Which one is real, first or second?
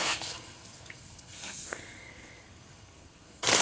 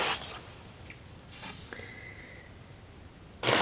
second